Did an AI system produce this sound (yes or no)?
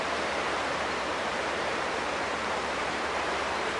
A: yes